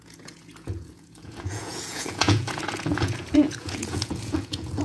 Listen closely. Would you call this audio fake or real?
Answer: fake